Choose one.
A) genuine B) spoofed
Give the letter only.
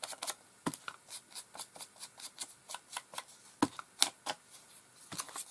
A